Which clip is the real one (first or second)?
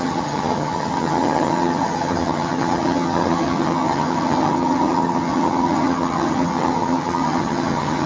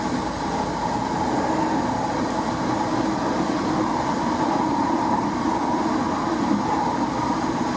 second